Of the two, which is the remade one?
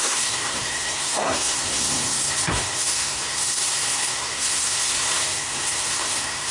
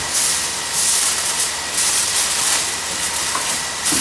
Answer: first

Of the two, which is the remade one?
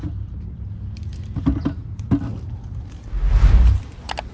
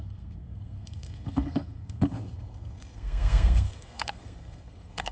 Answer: second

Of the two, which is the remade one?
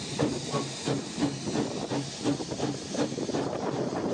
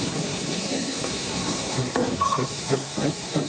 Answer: second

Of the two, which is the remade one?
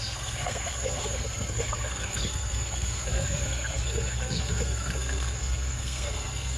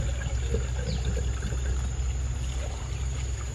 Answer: first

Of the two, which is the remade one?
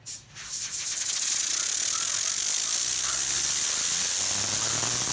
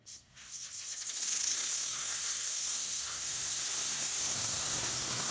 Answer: second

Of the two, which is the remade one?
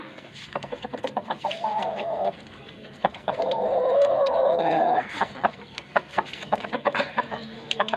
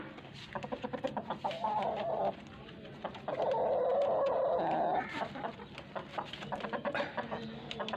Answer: first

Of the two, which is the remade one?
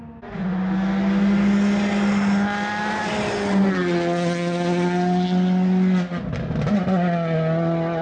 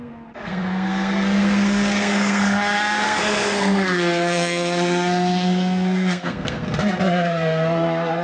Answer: second